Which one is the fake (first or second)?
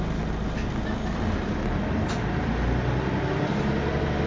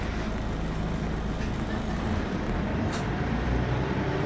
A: second